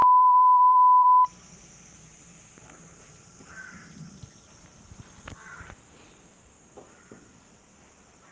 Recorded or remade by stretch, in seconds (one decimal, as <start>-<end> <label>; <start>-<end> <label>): 0.0-4.5 remade; 4.5-8.3 recorded